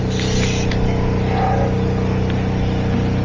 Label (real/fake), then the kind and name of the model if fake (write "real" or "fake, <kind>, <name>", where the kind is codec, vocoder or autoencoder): real